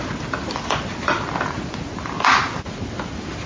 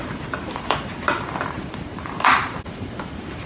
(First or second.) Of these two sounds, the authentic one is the first